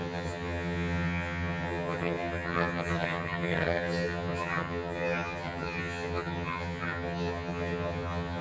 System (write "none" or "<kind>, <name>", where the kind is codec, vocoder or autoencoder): vocoder, HiFi-GAN